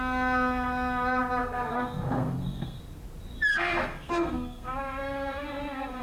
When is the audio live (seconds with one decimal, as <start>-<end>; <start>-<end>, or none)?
0.0-1.4; 2.8-3.5